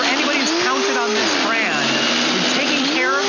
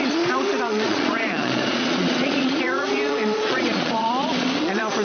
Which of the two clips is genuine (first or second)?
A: first